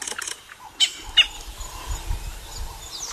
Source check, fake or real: real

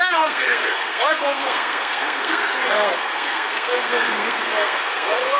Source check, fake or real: fake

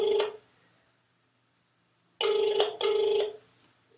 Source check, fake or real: real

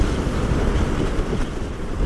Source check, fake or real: real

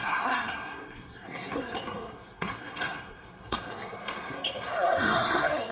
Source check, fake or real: fake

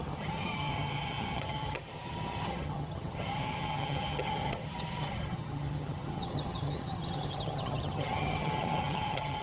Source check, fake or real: fake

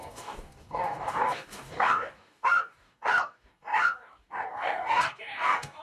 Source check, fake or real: fake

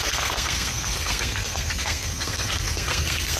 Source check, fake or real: fake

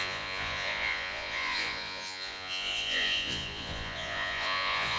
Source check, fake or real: fake